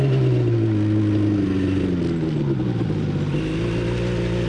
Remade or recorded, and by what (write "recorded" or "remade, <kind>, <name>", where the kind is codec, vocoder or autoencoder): recorded